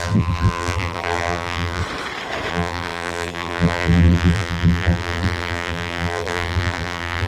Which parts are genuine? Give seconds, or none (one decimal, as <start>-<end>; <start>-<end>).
1.8-2.5